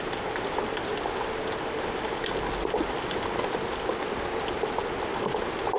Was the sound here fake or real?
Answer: real